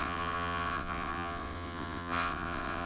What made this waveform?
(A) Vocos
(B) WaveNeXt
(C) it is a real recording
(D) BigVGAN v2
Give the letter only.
B